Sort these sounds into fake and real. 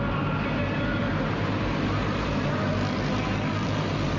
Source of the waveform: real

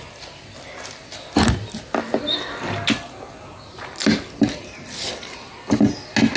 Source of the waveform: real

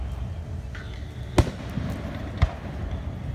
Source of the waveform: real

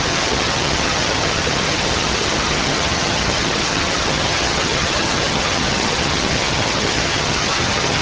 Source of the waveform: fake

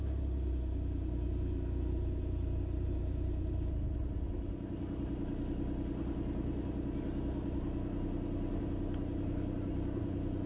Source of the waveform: real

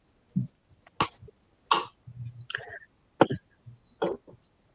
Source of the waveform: real